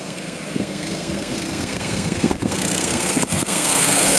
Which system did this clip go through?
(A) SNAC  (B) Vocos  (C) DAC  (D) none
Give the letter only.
A